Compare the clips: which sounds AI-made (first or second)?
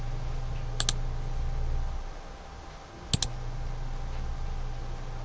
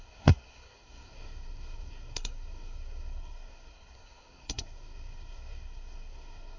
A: second